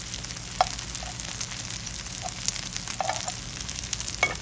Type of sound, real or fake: real